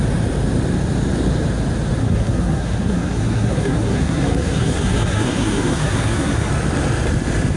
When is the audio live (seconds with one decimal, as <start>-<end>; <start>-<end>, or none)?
0.0-2.0; 6.5-7.6